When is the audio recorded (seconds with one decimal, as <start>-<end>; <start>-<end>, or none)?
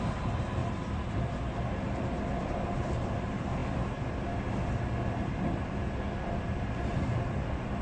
0.0-0.6; 1.2-7.8